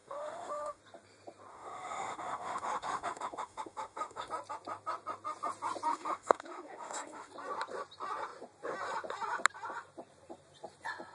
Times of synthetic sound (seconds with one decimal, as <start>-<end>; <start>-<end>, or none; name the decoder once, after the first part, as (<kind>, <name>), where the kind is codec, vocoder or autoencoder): 0.0-0.8 (autoencoder, DAC-VAE); 1.5-4.3; 5.9-7.3